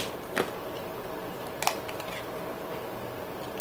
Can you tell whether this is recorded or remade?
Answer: recorded